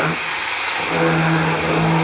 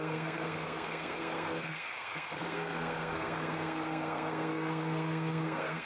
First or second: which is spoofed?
second